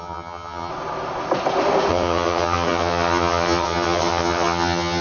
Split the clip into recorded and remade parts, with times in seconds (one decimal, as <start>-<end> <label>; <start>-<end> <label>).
0.0-0.7 remade; 0.7-1.9 recorded; 1.9-5.0 remade